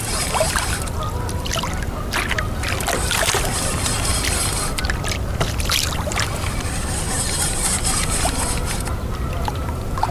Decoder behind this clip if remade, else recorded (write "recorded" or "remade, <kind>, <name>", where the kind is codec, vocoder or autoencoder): recorded